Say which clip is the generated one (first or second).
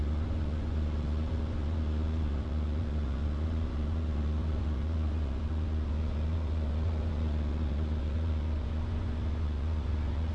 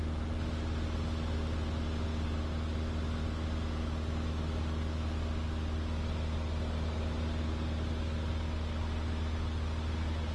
first